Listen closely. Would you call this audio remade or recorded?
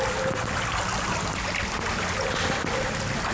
recorded